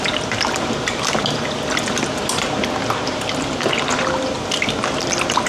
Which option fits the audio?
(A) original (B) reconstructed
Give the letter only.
A